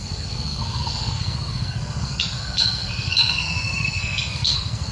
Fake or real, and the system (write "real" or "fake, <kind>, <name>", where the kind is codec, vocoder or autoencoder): fake, codec, SNAC